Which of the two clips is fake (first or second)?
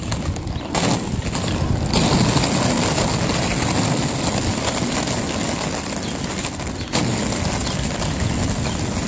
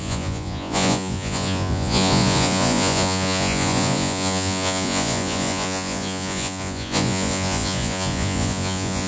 second